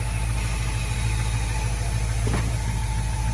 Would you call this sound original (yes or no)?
yes